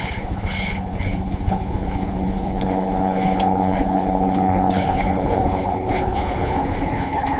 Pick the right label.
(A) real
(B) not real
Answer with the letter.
B